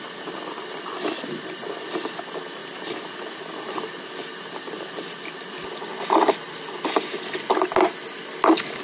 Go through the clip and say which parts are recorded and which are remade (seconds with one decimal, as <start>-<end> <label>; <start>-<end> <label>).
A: 0.0-8.8 recorded